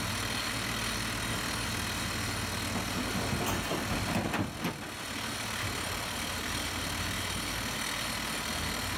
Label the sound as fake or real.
real